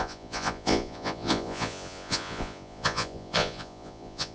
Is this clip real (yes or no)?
no